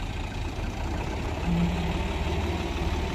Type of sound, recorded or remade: recorded